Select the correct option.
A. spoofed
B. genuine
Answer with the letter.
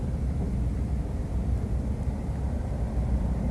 B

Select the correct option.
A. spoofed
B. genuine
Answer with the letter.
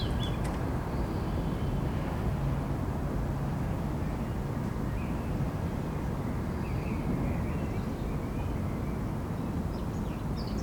B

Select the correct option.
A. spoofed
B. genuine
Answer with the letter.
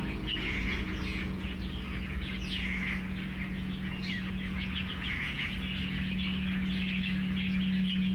A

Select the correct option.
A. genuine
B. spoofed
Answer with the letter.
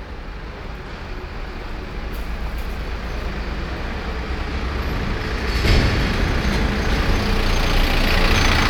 A